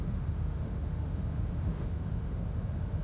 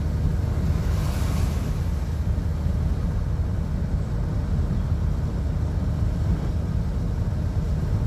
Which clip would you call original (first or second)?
second